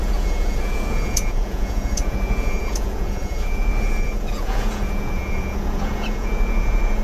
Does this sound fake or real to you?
fake